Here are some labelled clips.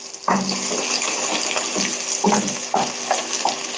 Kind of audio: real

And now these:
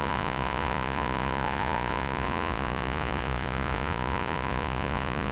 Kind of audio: fake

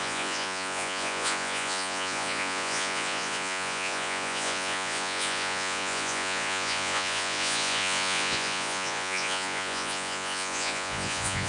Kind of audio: fake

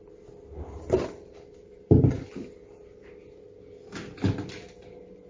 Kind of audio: real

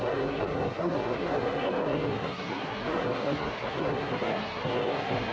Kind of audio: fake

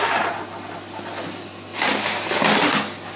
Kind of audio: real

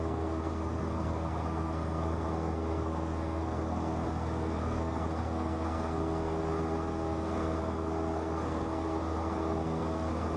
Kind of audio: fake